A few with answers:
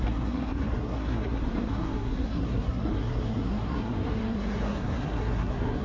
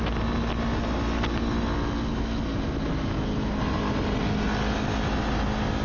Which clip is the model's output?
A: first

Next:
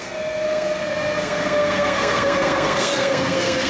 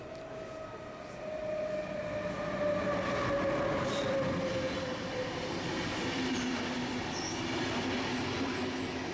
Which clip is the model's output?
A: first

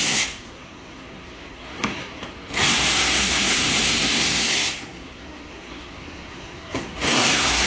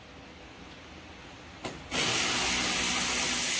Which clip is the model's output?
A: first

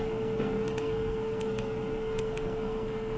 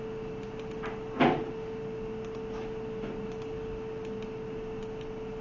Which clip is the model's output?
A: first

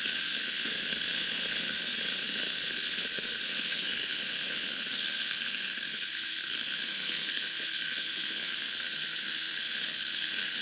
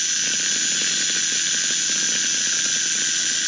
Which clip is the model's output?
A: first